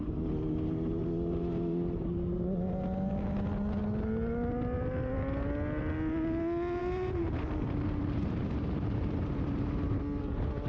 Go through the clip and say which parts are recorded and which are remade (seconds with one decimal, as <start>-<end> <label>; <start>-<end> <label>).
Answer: 0.0-6.8 recorded; 6.8-10.0 remade; 10.0-10.7 recorded